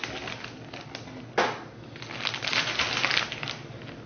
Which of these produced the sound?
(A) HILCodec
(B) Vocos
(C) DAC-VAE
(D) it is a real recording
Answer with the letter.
D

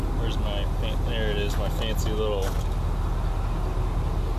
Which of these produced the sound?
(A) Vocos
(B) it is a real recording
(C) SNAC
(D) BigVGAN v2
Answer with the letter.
B